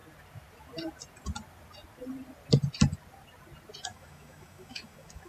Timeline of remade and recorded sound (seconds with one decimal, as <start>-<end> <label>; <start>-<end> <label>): 0.0-3.9 recorded; 3.9-5.3 remade